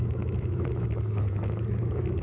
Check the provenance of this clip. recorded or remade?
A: remade